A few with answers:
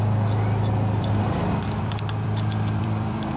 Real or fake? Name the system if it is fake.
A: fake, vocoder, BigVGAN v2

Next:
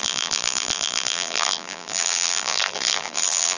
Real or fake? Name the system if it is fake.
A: fake, vocoder, BigVGAN v2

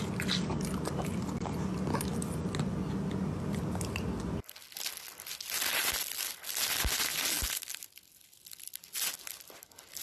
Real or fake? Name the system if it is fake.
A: real